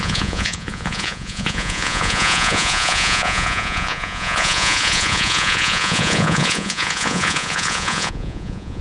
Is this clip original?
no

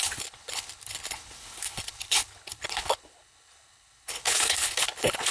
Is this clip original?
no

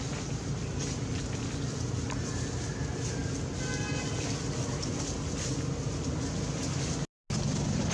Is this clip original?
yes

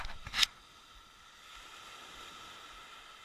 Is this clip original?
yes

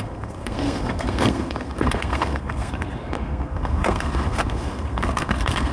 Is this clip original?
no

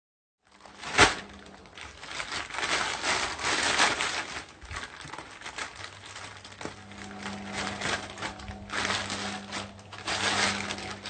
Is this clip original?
yes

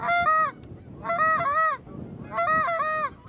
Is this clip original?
yes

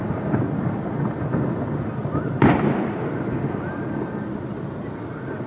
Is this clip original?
yes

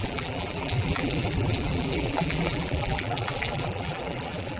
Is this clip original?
no